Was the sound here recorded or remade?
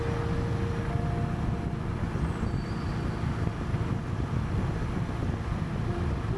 recorded